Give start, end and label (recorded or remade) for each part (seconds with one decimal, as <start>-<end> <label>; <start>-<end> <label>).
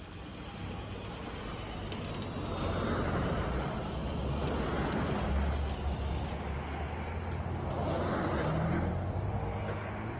0.0-10.2 recorded